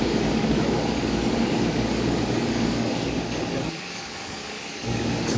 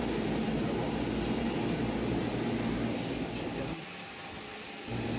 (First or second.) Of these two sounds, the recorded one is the second